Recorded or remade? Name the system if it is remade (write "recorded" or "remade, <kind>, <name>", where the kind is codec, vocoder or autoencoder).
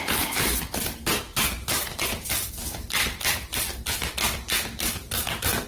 recorded